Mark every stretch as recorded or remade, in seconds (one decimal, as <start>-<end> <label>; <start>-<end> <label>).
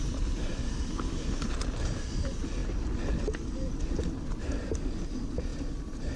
0.0-6.2 recorded